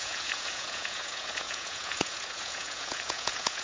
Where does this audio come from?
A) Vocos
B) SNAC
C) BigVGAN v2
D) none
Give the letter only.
A